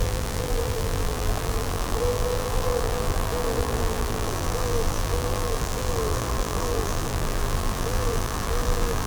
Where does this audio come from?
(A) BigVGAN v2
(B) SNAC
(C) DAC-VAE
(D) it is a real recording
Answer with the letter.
A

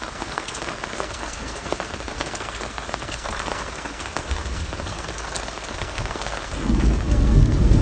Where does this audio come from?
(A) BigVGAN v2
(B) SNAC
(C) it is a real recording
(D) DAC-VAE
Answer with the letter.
B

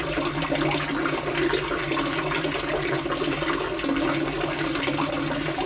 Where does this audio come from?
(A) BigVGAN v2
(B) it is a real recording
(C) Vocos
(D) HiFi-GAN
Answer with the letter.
B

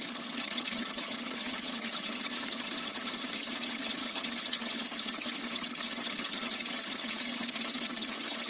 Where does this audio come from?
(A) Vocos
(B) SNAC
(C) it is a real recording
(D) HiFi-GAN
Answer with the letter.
D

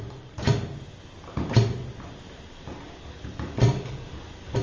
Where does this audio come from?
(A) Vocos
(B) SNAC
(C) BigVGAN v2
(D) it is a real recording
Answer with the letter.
D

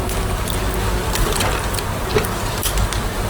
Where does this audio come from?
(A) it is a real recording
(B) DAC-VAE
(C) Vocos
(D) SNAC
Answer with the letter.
A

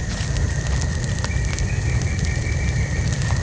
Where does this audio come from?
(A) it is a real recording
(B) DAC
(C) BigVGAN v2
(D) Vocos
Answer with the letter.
A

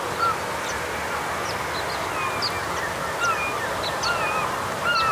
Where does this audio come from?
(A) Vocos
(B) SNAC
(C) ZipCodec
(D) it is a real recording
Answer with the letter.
D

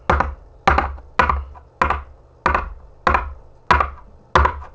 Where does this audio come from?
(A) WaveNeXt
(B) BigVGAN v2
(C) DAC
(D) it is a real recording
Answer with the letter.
D